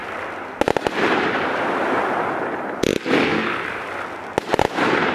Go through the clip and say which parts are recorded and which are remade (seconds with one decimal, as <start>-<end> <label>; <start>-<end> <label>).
0.0-5.1 recorded